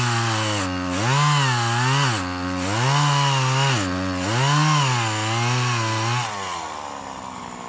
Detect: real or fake real